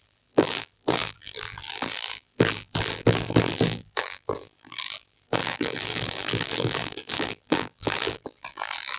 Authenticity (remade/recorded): remade